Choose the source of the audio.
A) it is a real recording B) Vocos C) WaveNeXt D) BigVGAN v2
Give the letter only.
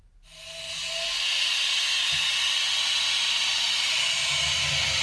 A